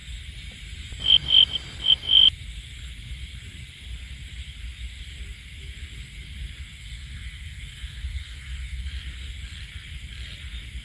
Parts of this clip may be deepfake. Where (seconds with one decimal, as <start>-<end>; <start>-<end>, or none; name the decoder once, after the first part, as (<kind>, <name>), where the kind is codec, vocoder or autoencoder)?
6.8-8.9 (codec, SNAC)